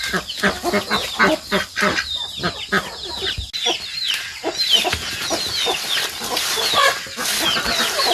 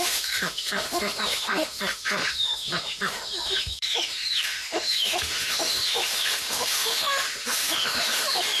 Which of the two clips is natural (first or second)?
first